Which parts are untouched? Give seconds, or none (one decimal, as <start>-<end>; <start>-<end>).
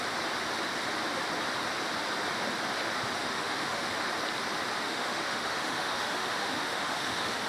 0.0-3.2; 3.9-4.8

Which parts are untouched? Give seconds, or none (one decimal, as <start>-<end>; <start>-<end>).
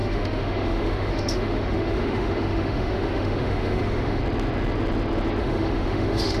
4.2-5.4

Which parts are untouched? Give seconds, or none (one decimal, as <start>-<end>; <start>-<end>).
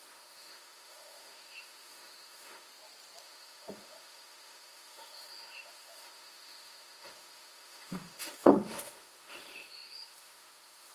2.7-3.2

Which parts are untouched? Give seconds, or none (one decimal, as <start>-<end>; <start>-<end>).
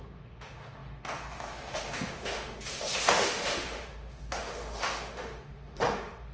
none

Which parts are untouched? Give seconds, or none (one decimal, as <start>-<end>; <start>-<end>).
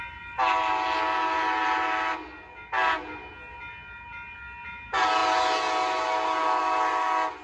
0.0-7.4